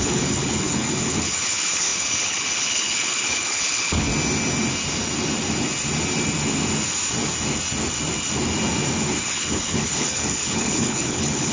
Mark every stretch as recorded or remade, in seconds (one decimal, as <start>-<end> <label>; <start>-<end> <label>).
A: 0.0-4.1 remade; 4.1-9.2 recorded; 9.2-11.5 remade